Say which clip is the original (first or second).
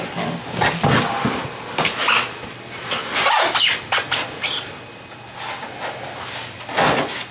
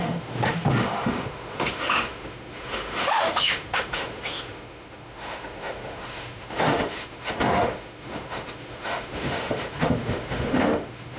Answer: first